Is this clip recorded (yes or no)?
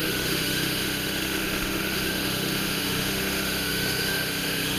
no